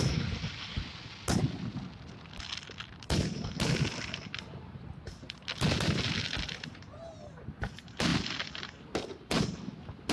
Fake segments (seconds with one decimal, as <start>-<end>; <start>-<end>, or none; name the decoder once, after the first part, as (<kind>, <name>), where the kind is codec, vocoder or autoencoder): 8.1-8.6 (vocoder, BigVGAN v2)